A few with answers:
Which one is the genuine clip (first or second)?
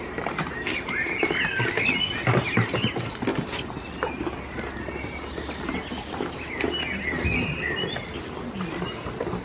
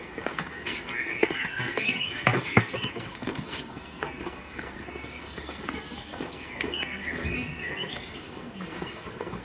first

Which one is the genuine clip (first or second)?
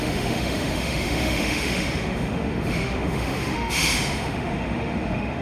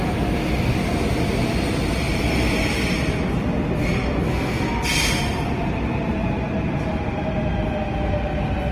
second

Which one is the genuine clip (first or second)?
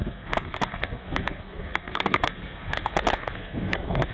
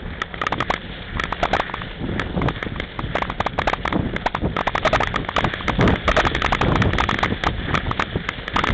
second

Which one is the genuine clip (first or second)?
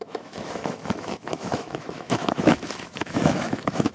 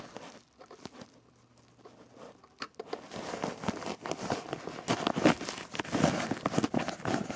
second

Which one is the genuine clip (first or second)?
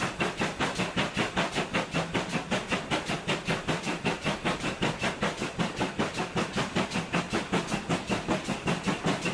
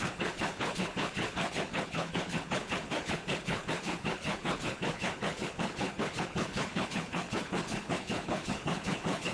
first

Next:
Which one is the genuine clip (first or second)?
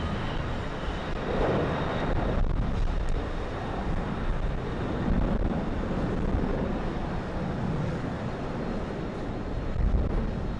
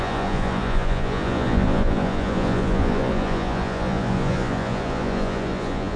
first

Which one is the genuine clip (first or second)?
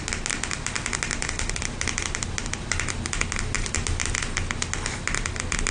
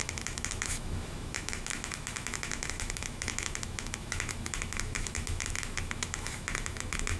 first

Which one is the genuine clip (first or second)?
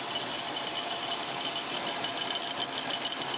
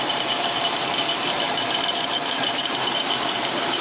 first